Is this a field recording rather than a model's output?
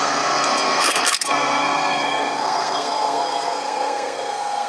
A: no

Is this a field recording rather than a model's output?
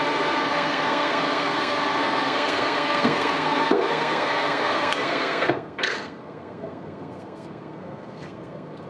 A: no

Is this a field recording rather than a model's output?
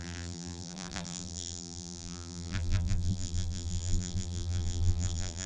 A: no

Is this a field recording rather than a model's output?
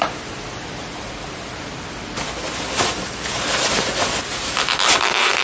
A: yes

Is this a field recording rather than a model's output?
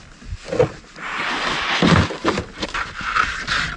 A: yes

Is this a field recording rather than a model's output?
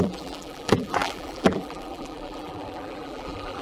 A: no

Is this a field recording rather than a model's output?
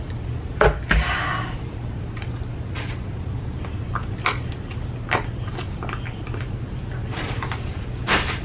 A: yes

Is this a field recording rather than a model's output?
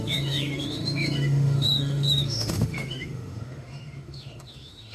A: no